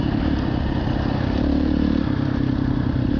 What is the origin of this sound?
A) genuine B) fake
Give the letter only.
B